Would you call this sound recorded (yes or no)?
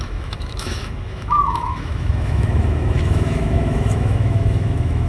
no